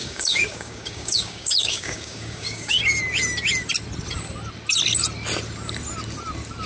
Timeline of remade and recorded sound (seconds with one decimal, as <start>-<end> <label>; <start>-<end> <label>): 0.0-2.8 remade; 2.8-6.7 recorded